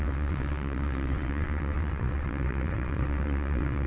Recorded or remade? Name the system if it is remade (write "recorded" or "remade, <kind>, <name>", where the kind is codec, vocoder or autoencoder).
remade, vocoder, WaveNeXt